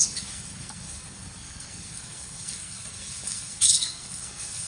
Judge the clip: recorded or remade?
remade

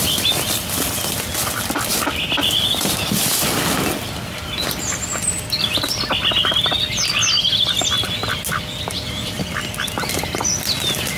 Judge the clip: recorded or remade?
recorded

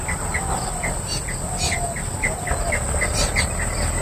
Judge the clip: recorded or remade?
recorded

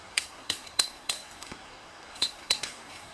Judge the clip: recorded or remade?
remade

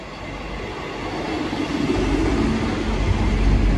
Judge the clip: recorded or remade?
recorded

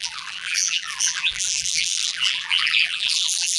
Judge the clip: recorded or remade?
remade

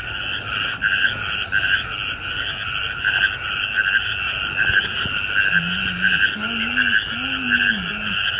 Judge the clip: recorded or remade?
recorded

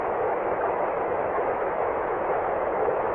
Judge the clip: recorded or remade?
remade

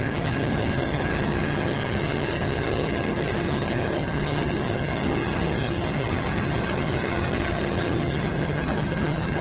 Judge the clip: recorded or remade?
remade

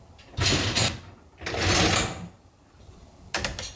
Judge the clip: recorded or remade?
recorded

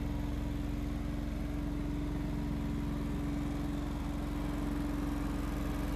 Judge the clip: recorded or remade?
recorded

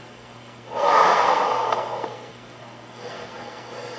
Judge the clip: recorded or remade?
remade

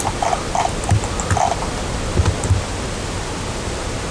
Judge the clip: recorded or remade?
recorded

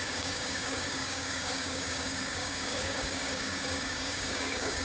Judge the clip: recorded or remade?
remade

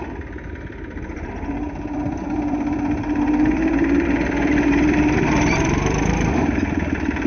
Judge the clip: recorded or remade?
remade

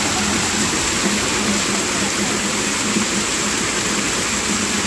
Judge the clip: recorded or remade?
recorded